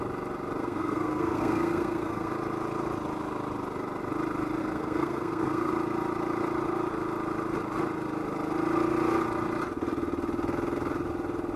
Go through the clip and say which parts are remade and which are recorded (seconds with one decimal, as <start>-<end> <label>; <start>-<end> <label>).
0.0-0.6 recorded; 0.6-2.3 remade; 2.3-4.6 recorded; 4.6-5.7 remade; 5.7-11.6 recorded